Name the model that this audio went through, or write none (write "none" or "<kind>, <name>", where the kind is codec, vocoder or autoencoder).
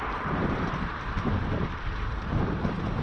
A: vocoder, BigVGAN v2